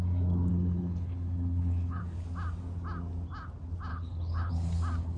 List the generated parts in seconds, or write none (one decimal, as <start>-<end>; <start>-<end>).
0.5-2.0; 3.9-4.5